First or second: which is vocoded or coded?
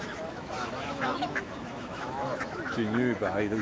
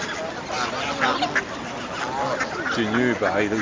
first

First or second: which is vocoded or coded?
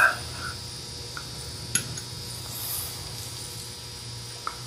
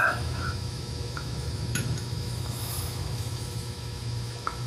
second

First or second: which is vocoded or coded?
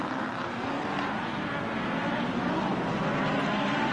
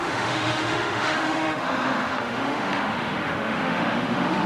second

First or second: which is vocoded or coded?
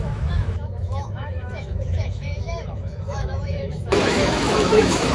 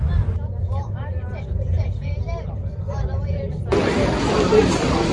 first